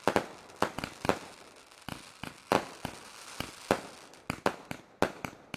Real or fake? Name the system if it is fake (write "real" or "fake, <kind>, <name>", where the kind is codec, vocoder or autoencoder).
real